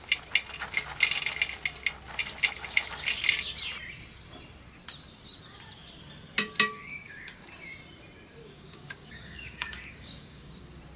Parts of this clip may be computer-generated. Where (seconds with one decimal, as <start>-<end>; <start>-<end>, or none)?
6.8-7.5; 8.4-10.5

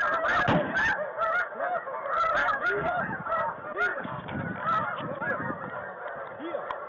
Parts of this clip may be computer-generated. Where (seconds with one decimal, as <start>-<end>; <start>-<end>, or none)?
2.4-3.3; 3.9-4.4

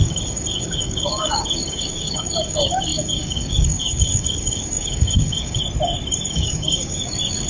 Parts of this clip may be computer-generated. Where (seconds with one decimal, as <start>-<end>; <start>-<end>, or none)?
0.0-5.6; 6.3-7.5

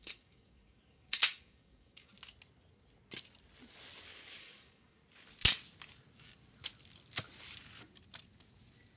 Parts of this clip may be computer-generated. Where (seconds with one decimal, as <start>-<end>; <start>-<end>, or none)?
0.0-2.1; 4.4-5.0